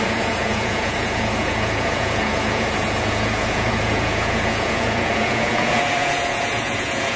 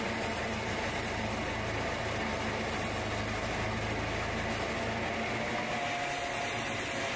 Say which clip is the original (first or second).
second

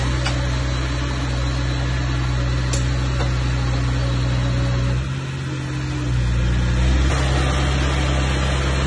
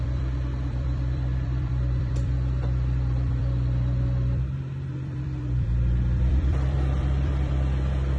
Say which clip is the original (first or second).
first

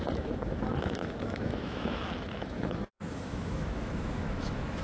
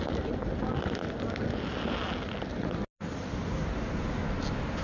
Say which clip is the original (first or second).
second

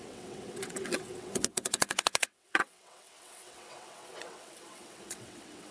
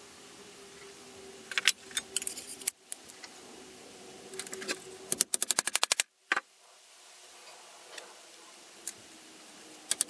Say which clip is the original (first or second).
second